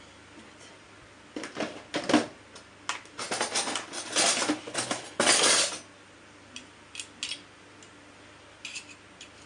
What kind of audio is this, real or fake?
real